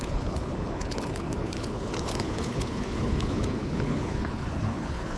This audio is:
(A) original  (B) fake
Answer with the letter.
B